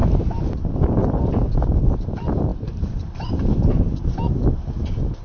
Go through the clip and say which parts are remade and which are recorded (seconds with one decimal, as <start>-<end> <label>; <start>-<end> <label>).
0.0-1.0 remade; 1.0-2.5 recorded; 2.5-3.9 remade; 3.9-5.2 recorded